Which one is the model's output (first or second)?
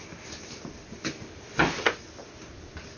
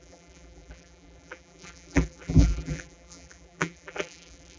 second